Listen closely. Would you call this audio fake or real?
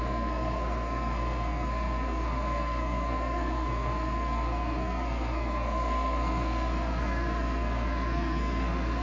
fake